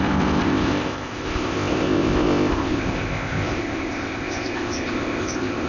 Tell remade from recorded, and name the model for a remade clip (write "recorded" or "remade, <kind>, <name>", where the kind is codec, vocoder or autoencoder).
remade, codec, ZipCodec